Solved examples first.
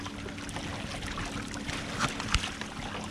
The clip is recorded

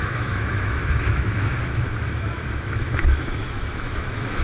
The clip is remade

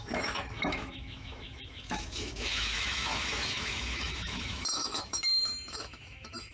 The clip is remade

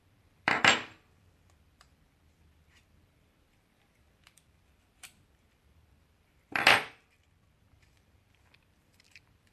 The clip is remade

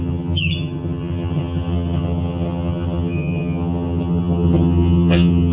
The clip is remade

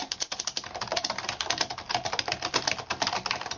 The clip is recorded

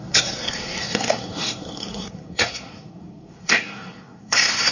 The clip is remade